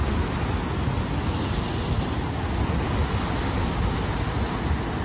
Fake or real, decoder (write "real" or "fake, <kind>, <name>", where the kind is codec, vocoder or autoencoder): real